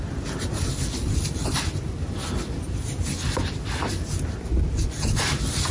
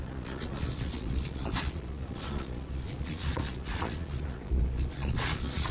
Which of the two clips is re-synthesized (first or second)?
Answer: second